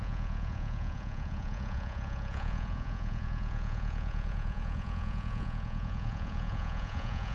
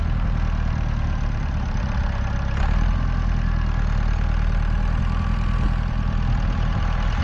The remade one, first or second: first